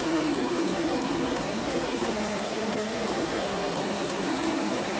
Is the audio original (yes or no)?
no